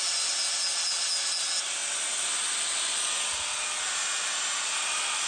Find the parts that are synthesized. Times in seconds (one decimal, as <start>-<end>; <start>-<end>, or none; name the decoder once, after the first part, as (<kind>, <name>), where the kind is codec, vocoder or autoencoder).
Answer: none